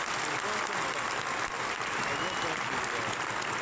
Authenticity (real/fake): real